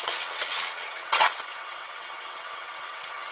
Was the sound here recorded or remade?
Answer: remade